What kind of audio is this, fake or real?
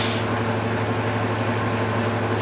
real